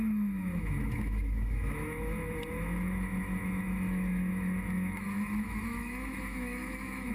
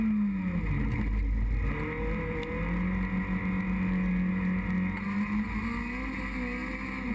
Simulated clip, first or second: first